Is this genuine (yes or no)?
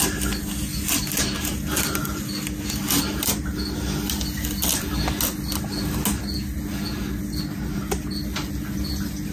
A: yes